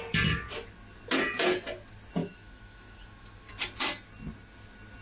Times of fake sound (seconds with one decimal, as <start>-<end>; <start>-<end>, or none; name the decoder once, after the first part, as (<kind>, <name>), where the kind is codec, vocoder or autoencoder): 2.2-3.5 (autoencoder, DAC-VAE)